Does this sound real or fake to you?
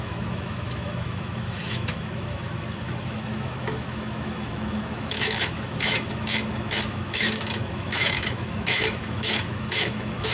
fake